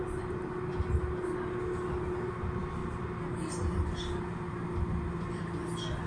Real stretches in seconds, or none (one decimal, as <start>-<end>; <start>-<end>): 0.0-6.1